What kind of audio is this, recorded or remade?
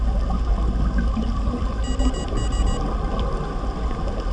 recorded